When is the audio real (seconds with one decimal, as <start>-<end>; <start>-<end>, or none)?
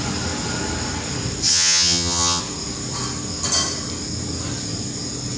0.0-1.5; 2.4-5.4